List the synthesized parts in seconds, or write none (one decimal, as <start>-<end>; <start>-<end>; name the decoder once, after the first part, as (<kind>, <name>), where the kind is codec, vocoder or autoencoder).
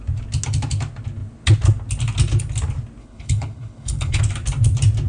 3.0-4.2 (codec, HILCodec)